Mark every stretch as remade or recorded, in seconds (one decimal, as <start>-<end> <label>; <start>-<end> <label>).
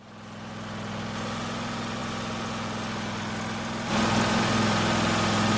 0.0-5.6 recorded